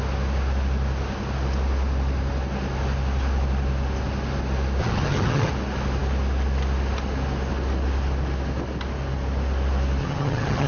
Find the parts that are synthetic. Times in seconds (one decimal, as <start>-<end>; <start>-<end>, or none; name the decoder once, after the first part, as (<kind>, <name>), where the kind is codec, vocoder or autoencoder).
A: 4.8-5.5 (vocoder, HiFi-GAN); 10.0-10.7